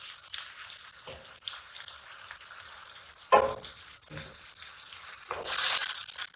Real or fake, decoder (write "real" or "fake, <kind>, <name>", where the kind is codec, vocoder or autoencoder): real